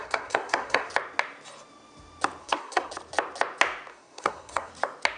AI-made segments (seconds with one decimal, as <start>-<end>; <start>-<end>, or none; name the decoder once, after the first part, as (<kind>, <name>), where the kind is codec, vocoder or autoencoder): 0.0-0.9 (codec, SNAC); 2.4-2.9; 3.9-4.7